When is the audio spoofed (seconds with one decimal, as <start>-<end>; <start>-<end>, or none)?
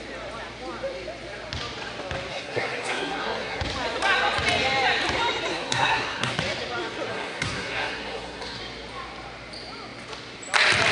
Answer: 2.3-3.6; 5.5-6.4; 7.1-8.6